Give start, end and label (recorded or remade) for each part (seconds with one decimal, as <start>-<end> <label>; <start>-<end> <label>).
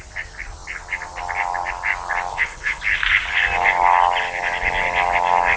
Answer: 0.0-2.3 recorded; 2.3-2.8 remade; 2.8-5.6 recorded